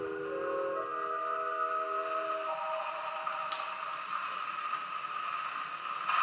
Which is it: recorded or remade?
recorded